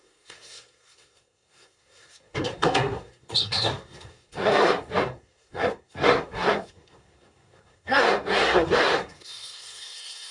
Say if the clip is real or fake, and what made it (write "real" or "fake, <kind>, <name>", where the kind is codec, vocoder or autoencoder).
fake, codec, SNAC